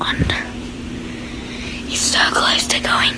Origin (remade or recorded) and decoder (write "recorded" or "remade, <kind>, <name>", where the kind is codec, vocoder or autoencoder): remade, vocoder, BigVGAN v2